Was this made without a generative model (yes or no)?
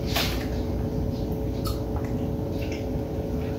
yes